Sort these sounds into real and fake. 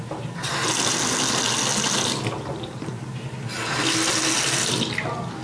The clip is real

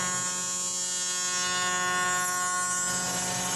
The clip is real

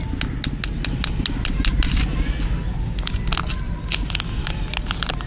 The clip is real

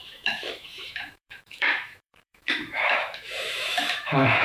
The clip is fake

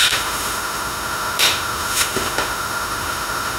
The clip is fake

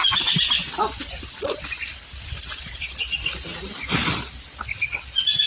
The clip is real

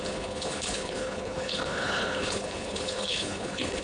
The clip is fake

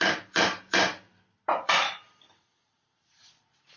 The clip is fake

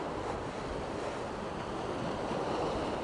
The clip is real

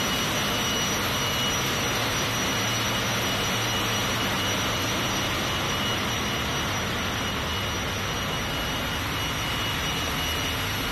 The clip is real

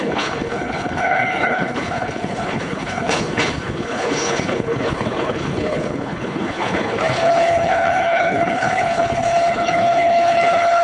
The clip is fake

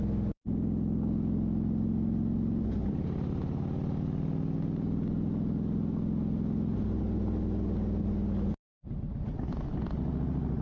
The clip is real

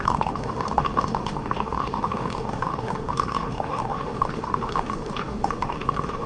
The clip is fake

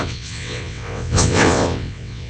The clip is fake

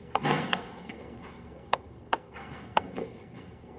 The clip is fake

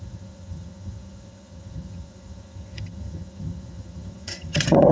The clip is fake